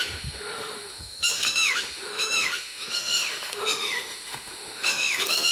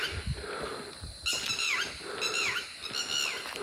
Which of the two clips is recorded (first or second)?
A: second